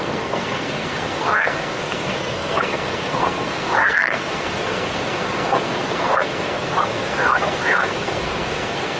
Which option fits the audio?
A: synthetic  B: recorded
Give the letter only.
A